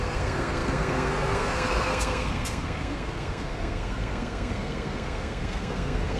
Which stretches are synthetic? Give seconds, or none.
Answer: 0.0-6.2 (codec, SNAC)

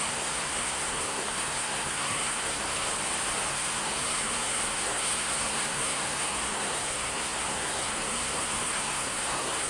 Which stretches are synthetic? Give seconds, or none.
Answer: 0.0-2.9 (codec, SNAC); 3.5-9.7

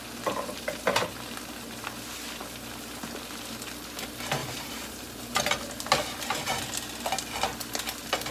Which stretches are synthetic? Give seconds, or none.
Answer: 4.4-5.5 (vocoder, BigVGAN v2)